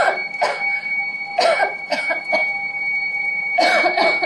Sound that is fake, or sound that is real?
real